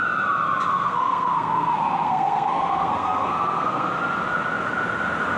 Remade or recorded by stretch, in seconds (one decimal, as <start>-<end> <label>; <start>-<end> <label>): 0.0-0.7 recorded; 0.7-3.9 remade; 3.9-5.4 recorded